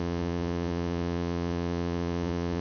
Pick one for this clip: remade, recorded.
remade